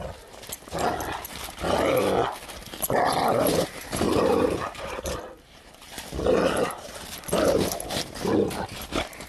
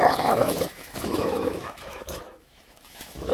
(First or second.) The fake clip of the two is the second